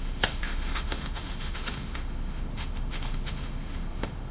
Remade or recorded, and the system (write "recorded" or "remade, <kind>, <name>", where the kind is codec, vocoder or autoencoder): remade, autoencoder, DAC-VAE